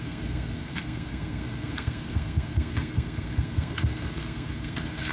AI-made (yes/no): yes